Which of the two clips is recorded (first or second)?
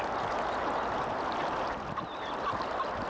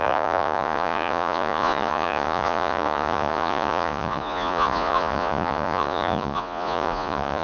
first